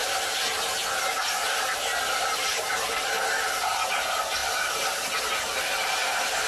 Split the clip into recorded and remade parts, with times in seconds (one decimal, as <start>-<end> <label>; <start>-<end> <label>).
0.0-6.5 recorded